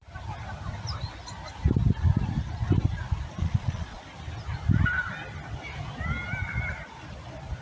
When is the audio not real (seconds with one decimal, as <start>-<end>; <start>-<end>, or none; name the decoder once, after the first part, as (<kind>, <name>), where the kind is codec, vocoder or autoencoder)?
3.4-4.0 (vocoder, Vocos)

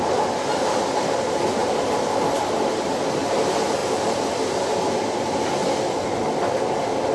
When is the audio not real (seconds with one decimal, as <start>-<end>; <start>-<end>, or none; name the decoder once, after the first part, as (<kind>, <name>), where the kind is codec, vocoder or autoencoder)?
none

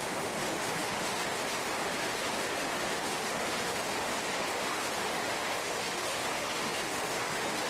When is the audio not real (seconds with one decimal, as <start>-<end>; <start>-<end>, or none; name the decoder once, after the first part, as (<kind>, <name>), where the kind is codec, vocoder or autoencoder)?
0.0-7.7 (autoencoder, DAC-VAE)

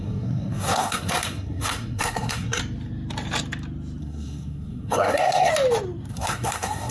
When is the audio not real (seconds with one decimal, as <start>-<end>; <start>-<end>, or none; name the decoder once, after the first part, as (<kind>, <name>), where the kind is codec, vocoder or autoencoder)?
0.0-2.6 (codec, SNAC); 4.0-5.5; 6.1-6.9

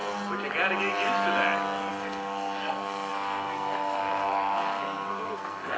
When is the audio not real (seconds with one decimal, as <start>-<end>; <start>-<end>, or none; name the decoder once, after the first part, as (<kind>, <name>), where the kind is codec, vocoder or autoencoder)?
1.9-5.8 (codec, SNAC)

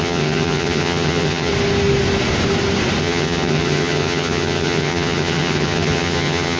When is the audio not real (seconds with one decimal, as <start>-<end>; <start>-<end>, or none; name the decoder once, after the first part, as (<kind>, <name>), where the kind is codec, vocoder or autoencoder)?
0.0-1.5 (vocoder, HiFi-GAN); 3.0-6.6

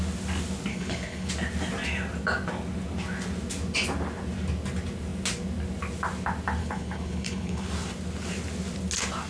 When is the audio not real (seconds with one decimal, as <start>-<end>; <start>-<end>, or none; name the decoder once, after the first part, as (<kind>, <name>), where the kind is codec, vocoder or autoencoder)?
0.7-1.3 (codec, HILCodec); 6.6-7.7

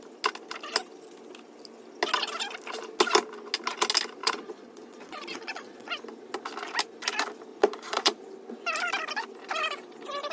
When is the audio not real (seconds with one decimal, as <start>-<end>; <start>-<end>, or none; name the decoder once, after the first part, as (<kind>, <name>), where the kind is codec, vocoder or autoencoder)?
4.2-5.9 (vocoder, Vocos); 7.5-8.2